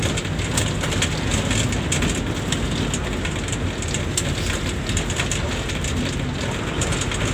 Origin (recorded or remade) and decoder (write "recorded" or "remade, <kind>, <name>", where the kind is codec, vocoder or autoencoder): recorded